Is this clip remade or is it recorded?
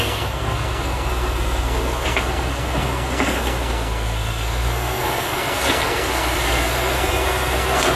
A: remade